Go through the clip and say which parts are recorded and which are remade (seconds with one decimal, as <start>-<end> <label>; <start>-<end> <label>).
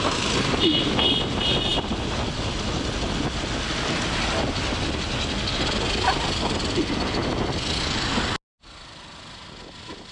0.0-10.1 recorded